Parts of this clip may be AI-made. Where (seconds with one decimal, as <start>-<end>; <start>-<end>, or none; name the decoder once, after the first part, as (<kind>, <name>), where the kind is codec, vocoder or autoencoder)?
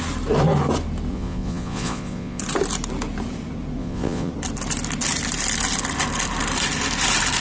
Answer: 1.1-2.4 (vocoder, Vocos); 3.8-4.3